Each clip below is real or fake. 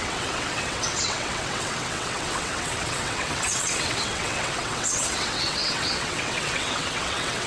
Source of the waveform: fake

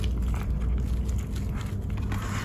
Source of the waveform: real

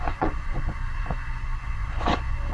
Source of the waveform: fake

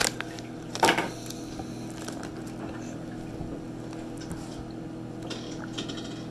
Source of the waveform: real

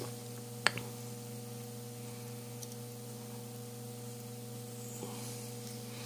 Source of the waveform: real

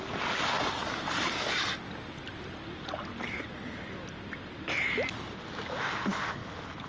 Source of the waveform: real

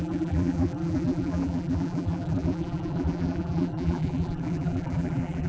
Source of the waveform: fake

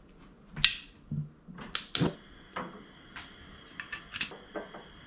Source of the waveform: real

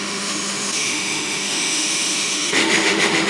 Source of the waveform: fake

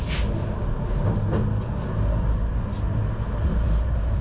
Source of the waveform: real